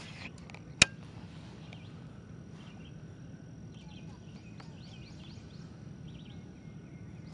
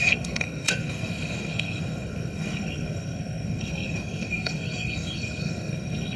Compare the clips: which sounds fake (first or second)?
second